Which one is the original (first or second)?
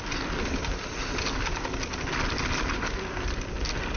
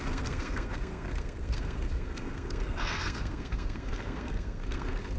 first